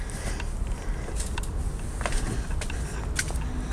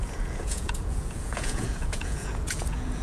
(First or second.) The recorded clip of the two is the first